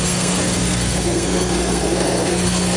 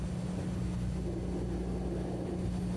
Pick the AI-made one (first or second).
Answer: first